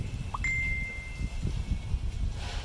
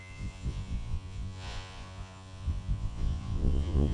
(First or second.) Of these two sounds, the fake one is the second